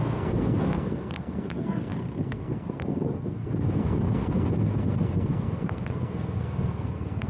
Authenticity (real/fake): fake